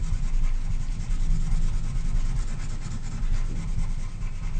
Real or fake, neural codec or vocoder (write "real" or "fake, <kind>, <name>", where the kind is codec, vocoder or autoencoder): real